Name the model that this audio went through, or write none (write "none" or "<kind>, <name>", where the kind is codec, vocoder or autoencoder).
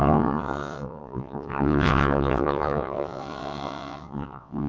vocoder, WaveNeXt